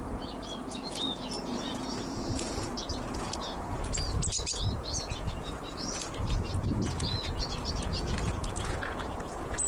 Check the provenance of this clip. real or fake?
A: fake